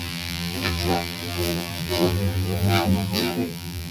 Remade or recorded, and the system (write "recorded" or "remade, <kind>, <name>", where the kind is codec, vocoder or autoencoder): remade, vocoder, BigVGAN v2